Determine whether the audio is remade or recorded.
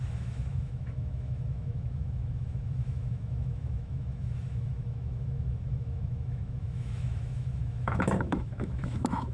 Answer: remade